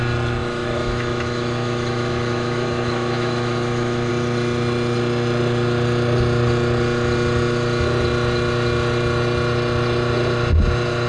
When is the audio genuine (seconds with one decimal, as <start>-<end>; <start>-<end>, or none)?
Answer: 0.0-0.4; 4.1-11.1